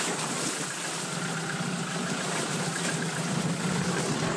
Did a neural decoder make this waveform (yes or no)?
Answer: no